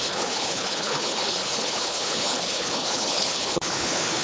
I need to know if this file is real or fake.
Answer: fake